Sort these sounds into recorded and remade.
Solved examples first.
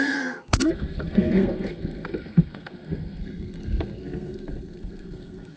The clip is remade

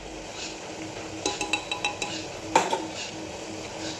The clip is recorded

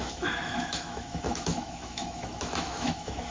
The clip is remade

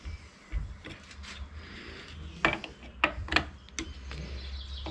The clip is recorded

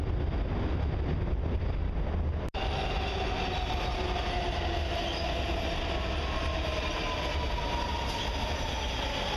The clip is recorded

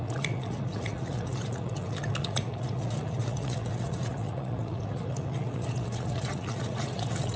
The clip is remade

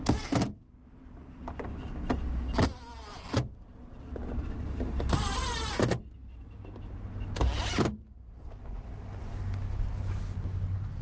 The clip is recorded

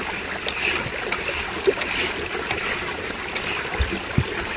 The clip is recorded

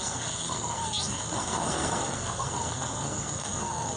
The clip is remade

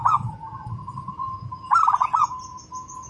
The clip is remade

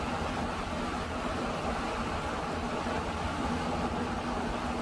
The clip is recorded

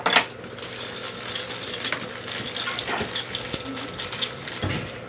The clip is recorded